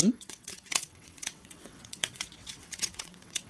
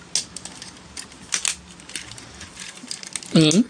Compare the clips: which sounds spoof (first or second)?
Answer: first